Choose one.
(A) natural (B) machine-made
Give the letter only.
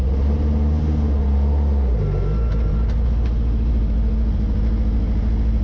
A